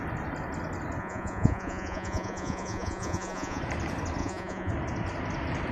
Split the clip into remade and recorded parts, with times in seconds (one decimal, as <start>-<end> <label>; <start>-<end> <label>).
0.0-1.0 recorded; 1.0-3.6 remade; 3.6-4.2 recorded; 4.2-4.7 remade; 4.7-5.7 recorded